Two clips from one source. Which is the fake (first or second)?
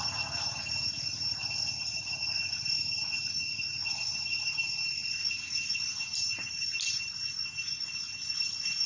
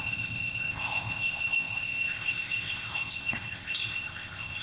second